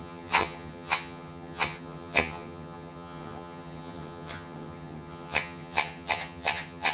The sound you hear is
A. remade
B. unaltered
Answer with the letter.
A